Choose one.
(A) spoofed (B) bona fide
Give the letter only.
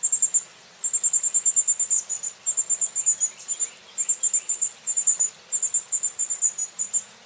B